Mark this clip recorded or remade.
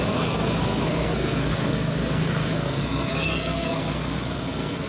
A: remade